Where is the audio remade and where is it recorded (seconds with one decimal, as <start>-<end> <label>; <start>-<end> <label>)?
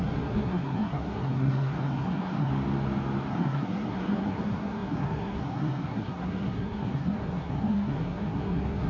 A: 0.0-2.5 remade; 2.5-3.3 recorded; 3.3-8.9 remade